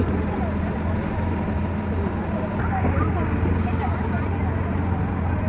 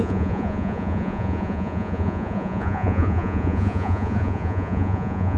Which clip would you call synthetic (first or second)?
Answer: second